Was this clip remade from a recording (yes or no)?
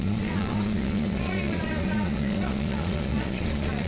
yes